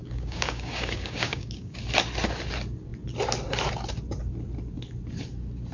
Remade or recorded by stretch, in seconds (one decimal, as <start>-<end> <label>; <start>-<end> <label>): 0.0-1.8 remade; 1.8-5.7 recorded